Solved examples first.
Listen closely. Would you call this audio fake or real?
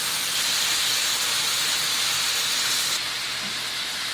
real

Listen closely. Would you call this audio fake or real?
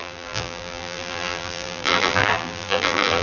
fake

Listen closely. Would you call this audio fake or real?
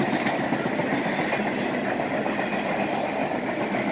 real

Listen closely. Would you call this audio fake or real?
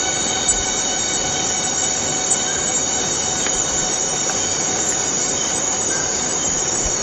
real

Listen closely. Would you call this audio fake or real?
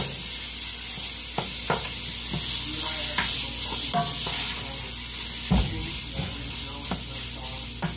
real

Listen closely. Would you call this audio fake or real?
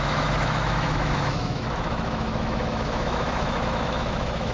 fake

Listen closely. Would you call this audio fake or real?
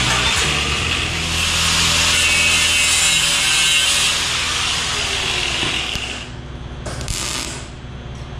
real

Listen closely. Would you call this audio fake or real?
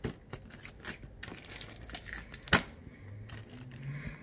real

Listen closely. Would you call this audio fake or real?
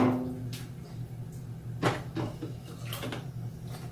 real